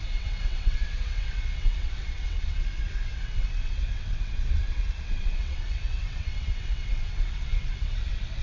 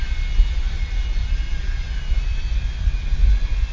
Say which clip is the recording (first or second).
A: second